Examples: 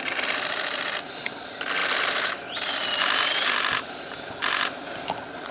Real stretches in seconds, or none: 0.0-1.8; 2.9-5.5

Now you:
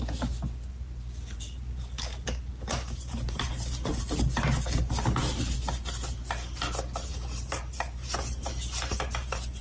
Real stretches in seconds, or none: 0.0-0.7; 4.0-7.1

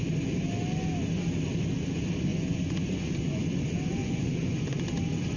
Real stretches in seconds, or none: 0.0-2.3; 3.4-4.0; 4.8-5.4

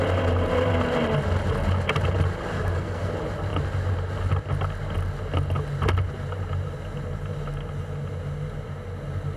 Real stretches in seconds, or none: 0.0-2.5; 3.1-9.4